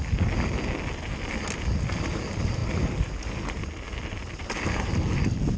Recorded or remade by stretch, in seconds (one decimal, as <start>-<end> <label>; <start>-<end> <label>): 0.0-5.6 recorded